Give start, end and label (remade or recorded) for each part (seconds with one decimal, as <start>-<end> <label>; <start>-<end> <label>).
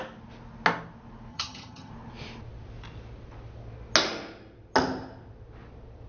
0.0-1.3 recorded; 1.3-1.9 remade; 1.9-6.1 recorded